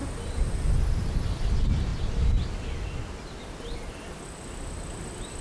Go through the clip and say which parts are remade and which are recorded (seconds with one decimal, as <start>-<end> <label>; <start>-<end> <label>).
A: 0.0-1.9 remade; 1.9-4.9 recorded; 4.9-5.4 remade